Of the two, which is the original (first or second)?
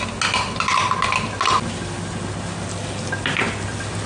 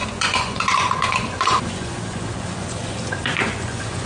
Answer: first